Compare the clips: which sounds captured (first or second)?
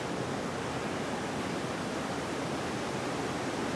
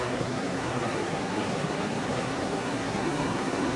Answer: first